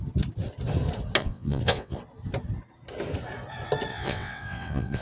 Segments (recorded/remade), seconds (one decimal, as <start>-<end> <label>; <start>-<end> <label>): 0.0-1.2 recorded; 1.2-2.0 remade; 2.0-3.9 recorded; 3.9-5.0 remade

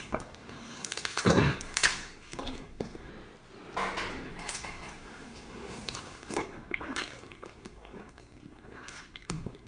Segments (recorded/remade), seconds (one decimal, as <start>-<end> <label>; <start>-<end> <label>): 0.0-3.1 remade; 3.1-4.1 recorded; 4.1-9.7 remade

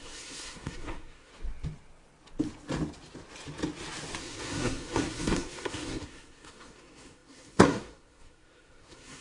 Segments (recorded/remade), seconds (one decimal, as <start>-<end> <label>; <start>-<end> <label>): 0.0-1.3 remade; 1.3-4.2 recorded; 4.2-9.2 remade

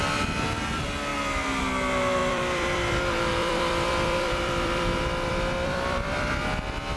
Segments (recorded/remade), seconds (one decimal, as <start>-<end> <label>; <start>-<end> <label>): 0.0-1.1 recorded; 1.1-1.6 remade; 1.6-2.2 recorded; 2.2-3.0 remade; 3.0-3.4 recorded; 3.4-6.4 remade; 6.4-7.0 recorded

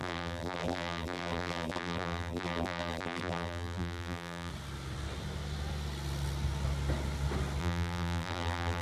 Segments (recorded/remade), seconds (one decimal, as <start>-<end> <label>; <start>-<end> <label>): 0.0-4.5 remade; 4.5-7.6 recorded; 7.6-8.8 remade

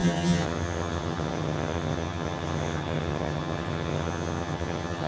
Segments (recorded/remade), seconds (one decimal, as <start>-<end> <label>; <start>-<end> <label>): 0.0-5.1 remade

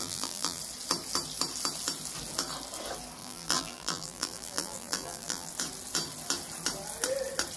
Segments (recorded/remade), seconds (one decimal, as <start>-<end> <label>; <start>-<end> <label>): 0.0-0.6 remade; 0.6-3.2 recorded; 3.2-5.5 remade; 5.5-7.6 recorded

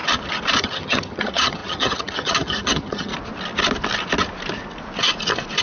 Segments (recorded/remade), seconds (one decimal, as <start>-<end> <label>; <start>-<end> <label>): 0.0-0.6 recorded; 0.6-3.1 remade; 3.1-5.6 recorded